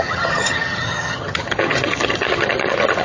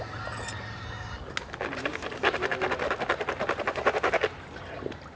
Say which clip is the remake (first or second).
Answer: first